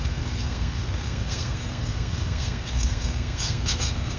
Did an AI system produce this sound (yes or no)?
yes